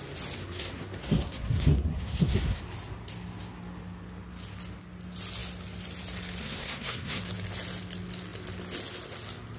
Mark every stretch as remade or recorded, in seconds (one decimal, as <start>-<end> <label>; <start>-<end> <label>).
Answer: 0.0-0.4 recorded; 0.4-2.6 remade; 2.6-6.4 recorded; 6.4-7.2 remade; 7.2-9.6 recorded